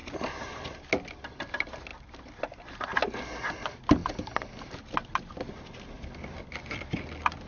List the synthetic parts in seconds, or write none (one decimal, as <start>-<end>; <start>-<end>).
none